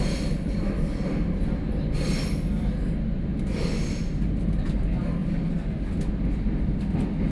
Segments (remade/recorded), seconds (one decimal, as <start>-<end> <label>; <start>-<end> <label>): 0.0-7.3 recorded